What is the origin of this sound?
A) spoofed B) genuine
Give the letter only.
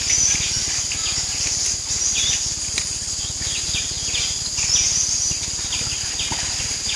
B